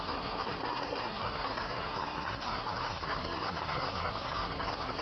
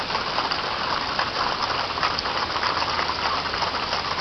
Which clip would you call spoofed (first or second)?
first